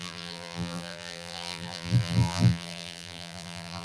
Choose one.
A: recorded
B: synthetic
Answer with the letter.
B